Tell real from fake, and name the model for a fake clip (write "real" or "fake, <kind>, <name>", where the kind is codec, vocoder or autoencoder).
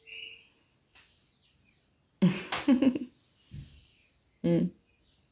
real